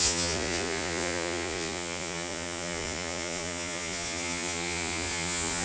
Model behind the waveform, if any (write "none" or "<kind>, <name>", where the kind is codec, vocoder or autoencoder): vocoder, Vocos